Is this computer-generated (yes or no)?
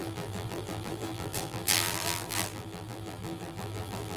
yes